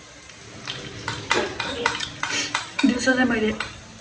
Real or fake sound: real